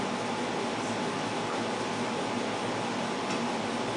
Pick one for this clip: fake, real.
real